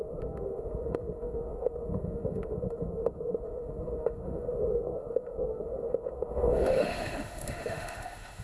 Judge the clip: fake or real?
fake